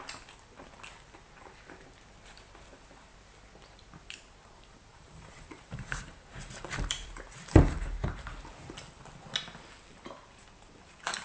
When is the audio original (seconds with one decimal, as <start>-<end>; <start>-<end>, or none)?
0.0-4.9; 7.1-11.2